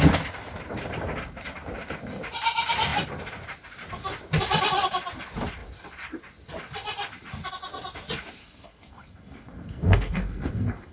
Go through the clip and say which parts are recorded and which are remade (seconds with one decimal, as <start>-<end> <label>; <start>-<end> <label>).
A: 0.0-8.4 recorded; 8.4-10.9 remade